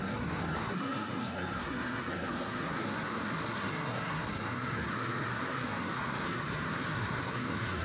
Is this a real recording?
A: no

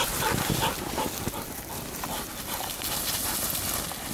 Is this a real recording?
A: yes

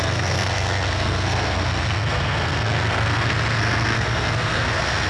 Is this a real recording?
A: no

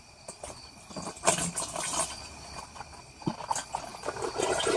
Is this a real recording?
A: yes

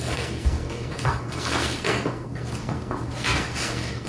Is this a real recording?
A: no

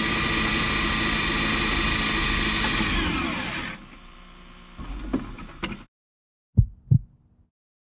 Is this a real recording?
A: yes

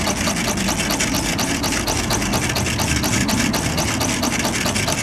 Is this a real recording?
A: yes